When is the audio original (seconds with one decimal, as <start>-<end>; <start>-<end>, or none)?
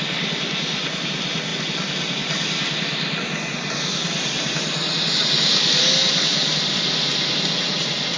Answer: 0.0-8.2